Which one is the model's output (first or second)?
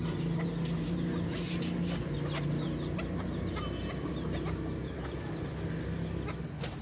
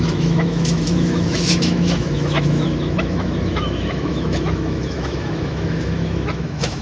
second